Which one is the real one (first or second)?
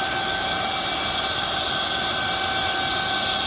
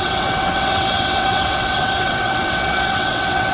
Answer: first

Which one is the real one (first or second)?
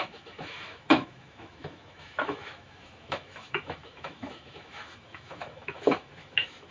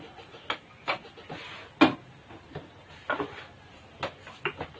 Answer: second